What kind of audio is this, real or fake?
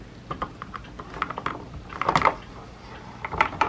real